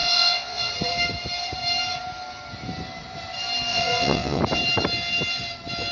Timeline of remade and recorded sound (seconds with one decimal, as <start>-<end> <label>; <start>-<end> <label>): 0.0-0.7 remade; 0.7-3.7 recorded; 3.7-4.4 remade; 4.4-5.9 recorded